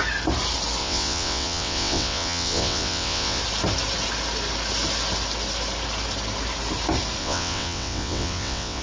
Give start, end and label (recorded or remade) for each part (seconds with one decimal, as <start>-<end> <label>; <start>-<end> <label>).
0.0-0.8 recorded; 0.8-3.4 remade; 3.4-7.2 recorded; 7.2-8.8 remade